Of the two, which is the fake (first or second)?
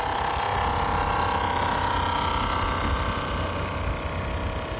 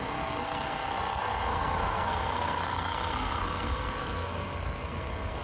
second